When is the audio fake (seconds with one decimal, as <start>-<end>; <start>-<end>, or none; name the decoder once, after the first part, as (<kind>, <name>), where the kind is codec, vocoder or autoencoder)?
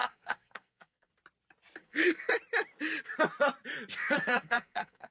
0.0-1.1 (codec, SNAC); 1.8-2.3; 4.0-5.1